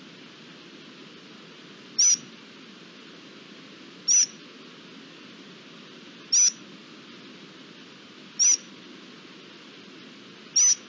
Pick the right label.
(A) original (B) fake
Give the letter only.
A